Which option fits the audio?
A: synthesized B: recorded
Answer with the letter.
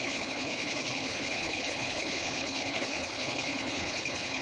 A